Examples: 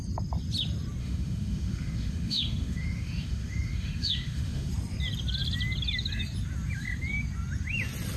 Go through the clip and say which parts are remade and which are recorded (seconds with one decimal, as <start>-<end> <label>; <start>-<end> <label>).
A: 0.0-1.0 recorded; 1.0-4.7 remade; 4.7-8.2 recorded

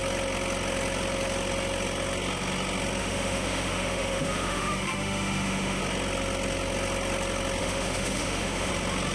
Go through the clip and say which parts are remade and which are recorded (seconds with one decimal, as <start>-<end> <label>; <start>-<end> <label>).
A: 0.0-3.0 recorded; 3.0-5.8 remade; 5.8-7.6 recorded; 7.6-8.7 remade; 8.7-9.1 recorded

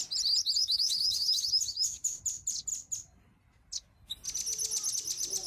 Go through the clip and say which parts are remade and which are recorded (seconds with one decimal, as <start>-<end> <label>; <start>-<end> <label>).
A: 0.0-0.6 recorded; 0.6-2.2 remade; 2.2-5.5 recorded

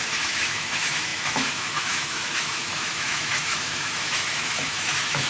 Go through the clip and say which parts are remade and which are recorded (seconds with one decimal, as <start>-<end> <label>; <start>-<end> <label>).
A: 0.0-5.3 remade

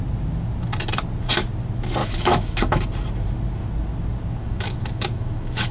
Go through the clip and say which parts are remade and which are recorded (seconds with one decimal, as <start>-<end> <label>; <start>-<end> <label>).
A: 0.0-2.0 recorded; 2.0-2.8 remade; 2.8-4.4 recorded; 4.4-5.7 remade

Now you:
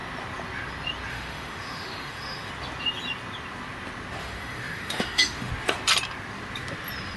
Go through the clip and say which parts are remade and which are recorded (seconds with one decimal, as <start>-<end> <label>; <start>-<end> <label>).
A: 0.0-1.1 recorded; 1.1-2.5 remade; 2.5-4.2 recorded; 4.2-5.5 remade; 5.5-7.2 recorded

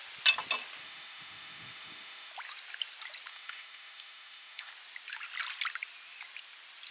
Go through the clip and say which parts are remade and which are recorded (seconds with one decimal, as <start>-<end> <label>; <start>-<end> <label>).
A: 0.0-0.8 recorded; 0.8-2.3 remade; 2.3-3.3 recorded; 3.3-4.7 remade; 4.7-6.9 recorded